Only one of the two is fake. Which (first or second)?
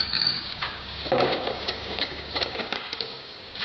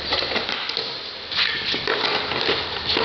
first